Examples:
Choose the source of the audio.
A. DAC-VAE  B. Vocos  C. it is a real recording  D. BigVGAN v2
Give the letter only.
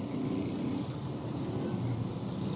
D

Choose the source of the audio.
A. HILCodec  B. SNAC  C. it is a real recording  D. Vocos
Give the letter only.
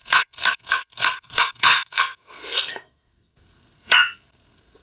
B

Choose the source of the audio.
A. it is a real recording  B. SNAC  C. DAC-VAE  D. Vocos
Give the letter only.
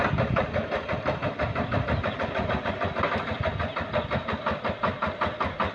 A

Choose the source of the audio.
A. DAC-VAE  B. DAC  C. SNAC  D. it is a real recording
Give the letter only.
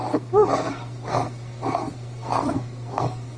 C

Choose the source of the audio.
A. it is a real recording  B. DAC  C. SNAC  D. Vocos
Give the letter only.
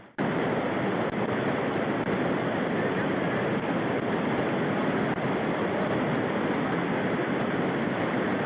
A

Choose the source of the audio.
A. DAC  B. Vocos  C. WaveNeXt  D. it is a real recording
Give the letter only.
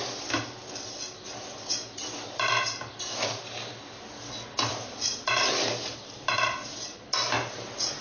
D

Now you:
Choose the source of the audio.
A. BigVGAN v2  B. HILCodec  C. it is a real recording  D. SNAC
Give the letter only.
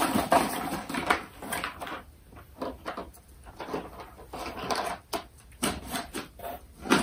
C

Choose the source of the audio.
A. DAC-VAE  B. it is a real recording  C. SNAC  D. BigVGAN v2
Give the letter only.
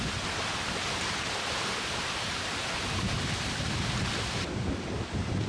B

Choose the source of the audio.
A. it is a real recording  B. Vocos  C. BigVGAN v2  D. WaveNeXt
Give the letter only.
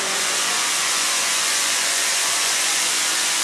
B